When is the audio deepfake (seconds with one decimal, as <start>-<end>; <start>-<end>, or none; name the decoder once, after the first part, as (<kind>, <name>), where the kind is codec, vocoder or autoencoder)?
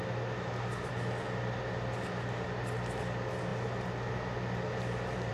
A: none